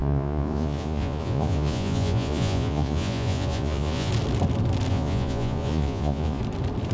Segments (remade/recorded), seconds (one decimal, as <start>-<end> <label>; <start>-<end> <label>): 0.0-4.1 remade; 4.1-4.9 recorded; 4.9-6.4 remade; 6.4-6.9 recorded